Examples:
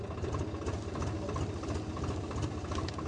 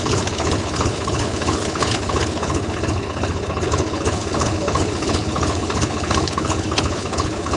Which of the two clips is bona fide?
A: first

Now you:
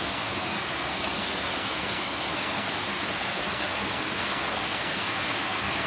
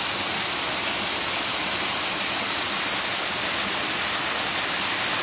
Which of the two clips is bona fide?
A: second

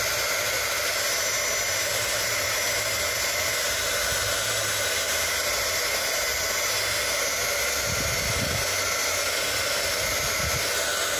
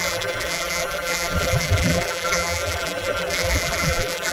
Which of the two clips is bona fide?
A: first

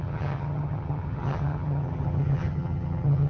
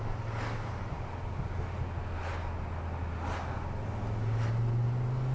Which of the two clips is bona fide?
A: second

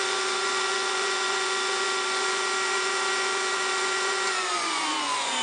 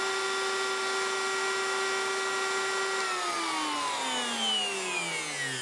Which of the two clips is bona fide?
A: second